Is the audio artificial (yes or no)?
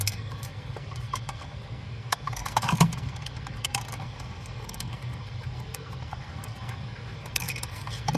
yes